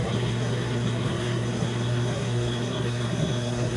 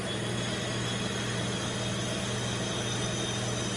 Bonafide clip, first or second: second